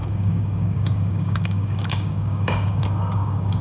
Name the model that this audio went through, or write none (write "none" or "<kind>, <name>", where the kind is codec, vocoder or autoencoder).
codec, DAC